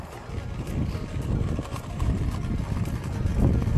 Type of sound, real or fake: real